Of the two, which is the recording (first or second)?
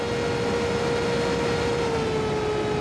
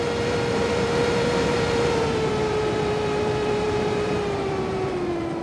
first